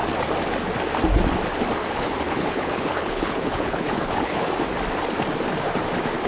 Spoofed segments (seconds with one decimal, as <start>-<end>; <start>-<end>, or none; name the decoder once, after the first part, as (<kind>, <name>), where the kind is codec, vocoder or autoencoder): 1.8-4.5 (codec, HILCodec)